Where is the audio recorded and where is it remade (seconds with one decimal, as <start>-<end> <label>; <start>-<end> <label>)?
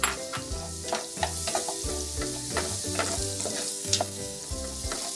0.0-3.7 recorded; 3.7-4.4 remade; 4.4-5.2 recorded